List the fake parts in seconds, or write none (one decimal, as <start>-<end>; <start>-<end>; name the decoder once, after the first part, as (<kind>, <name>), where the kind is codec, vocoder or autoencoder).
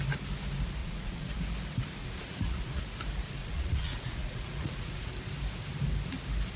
0.8-1.4 (vocoder, Vocos); 2.0-2.8; 3.4-5.1